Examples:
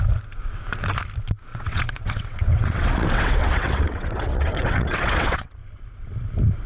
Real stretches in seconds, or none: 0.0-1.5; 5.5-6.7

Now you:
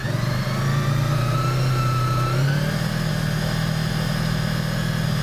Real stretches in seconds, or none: 0.0-5.2

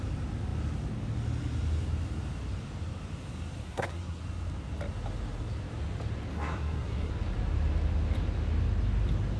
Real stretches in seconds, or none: 0.0-3.6; 4.2-6.3; 7.1-9.4

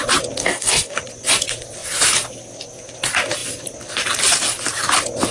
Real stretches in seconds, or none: 0.0-0.4; 1.0-5.3

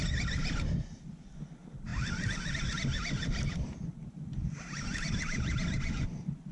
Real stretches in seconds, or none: 0.0-6.5

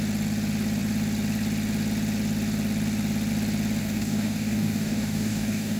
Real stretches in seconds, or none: 0.0-3.8